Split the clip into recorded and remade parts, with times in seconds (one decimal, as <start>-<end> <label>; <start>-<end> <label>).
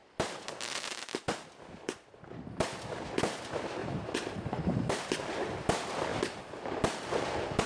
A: 0.0-3.8 recorded; 3.8-5.1 remade; 5.1-6.1 recorded; 6.1-6.8 remade; 6.8-7.7 recorded